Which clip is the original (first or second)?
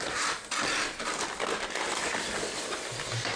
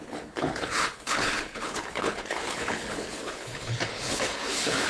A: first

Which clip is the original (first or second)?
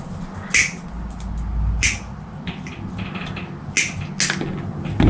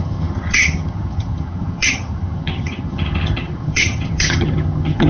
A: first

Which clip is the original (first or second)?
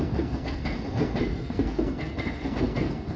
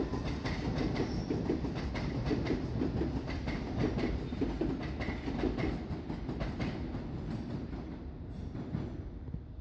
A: second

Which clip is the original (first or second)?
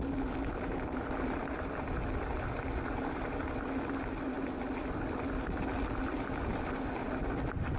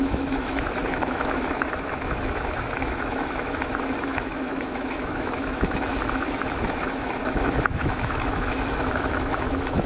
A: first